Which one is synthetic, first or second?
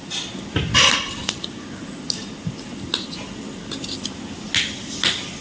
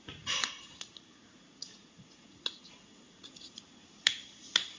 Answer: second